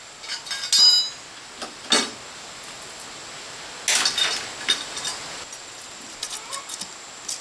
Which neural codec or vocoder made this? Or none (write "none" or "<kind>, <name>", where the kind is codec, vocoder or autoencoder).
none